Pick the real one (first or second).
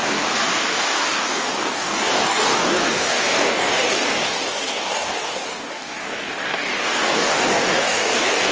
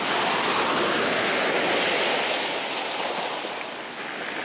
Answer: second